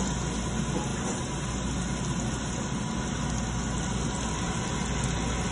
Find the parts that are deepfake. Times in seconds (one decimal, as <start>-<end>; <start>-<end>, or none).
none